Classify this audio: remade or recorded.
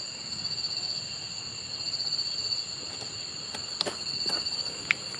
recorded